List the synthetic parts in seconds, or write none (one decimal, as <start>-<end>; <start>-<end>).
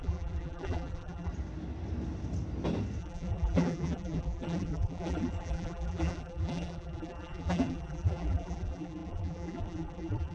0.0-1.3; 3.0-10.3